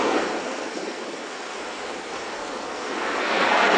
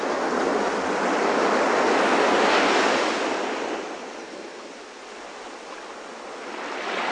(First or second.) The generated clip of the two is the first